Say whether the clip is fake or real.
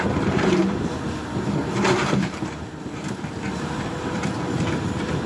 fake